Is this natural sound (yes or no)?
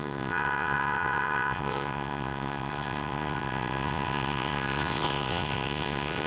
no